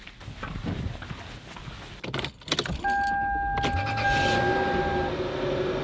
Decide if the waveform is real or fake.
real